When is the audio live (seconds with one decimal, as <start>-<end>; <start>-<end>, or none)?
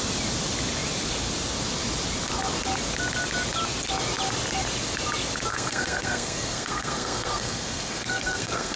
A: 0.0-5.5